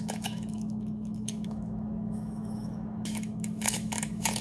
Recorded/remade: remade